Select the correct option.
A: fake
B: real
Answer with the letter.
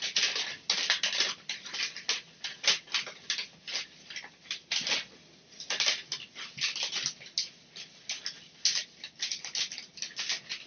B